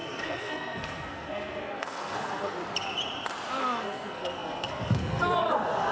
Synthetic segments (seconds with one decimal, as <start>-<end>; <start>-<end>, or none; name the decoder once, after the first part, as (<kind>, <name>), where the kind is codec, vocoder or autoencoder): 0.0-2.6 (codec, SNAC); 3.6-5.9